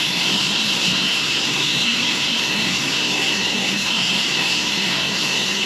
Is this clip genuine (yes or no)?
no